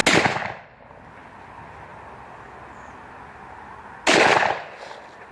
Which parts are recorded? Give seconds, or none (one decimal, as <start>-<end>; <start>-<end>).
0.0-5.3